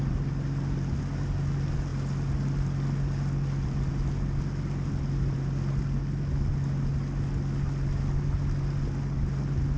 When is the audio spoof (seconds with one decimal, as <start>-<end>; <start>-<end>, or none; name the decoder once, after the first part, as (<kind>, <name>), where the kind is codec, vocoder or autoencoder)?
none